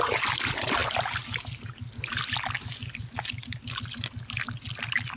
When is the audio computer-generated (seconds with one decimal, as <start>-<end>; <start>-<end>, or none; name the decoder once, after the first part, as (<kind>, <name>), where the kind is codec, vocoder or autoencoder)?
none